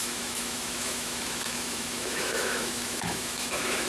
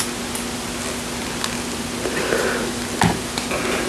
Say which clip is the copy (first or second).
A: first